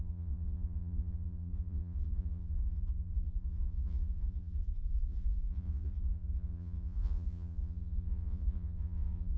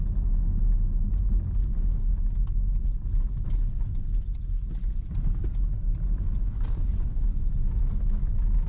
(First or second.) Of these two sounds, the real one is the second